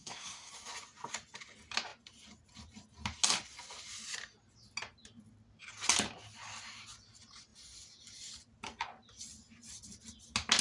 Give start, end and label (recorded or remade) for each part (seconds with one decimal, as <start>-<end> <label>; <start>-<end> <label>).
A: 0.0-0.5 remade; 0.5-10.6 recorded